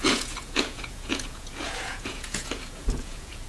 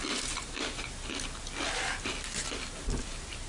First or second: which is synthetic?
first